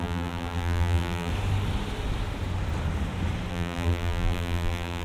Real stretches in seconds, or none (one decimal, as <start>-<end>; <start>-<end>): 1.3-3.5